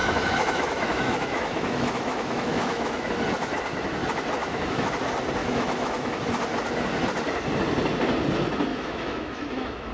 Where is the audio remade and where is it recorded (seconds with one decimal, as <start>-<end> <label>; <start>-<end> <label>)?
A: 0.0-3.1 remade; 3.1-4.4 recorded; 4.4-4.9 remade; 4.9-5.4 recorded; 5.4-6.2 remade; 6.2-8.7 recorded; 8.7-9.9 remade